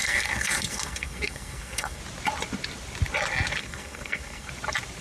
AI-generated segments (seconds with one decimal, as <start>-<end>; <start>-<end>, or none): 0.0-2.0; 3.6-4.5